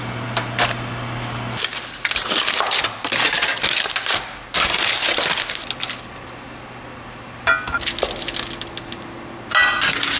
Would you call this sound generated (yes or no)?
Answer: no